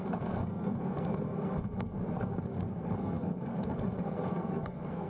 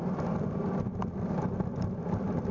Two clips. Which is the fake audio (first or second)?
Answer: first